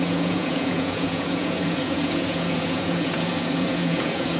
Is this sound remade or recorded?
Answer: remade